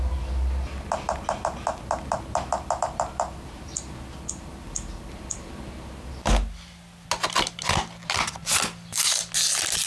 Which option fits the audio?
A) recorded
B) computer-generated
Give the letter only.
A